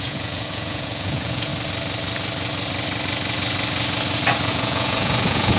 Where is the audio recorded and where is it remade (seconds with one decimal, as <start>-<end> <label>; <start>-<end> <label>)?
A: 0.0-1.5 remade; 1.5-4.5 recorded; 4.5-5.6 remade